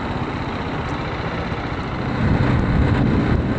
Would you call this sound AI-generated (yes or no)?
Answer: no